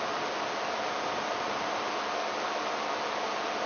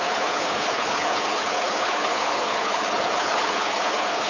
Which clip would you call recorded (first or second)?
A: first